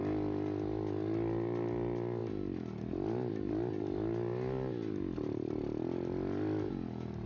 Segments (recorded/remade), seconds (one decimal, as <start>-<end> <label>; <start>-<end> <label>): 0.0-7.3 recorded